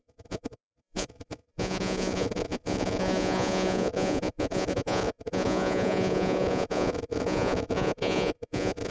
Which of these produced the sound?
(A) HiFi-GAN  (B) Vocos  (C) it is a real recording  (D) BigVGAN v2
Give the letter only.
B